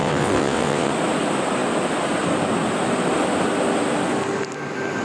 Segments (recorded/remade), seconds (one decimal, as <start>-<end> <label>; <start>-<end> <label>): 0.0-0.9 remade; 0.9-5.0 recorded